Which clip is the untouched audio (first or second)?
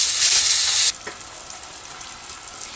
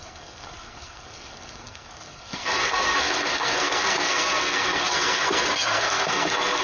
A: first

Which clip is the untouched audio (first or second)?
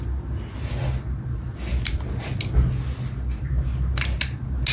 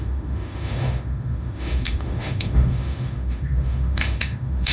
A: first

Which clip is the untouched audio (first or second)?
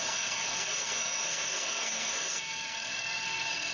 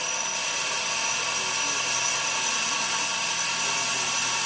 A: second